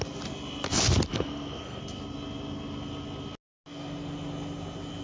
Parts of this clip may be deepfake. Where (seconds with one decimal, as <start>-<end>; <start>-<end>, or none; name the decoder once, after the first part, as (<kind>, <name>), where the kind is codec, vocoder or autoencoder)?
1.1-1.8 (codec, SNAC)